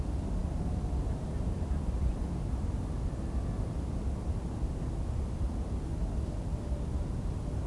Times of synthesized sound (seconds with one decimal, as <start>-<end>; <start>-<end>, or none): none